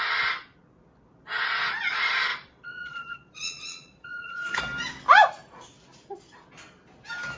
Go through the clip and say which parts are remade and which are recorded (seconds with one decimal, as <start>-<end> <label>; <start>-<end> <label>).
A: 0.0-2.3 recorded; 2.3-4.6 remade; 4.6-7.4 recorded